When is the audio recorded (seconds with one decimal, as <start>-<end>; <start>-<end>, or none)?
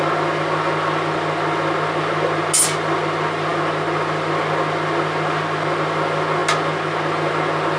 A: 0.0-7.8